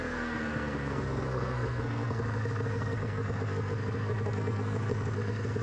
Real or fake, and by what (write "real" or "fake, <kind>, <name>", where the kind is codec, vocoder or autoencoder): fake, codec, SNAC